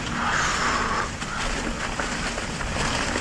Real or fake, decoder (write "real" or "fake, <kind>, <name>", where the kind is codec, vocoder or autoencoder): real